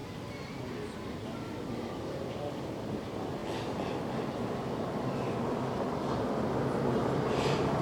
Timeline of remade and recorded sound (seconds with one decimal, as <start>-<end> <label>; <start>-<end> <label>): 0.0-7.8 recorded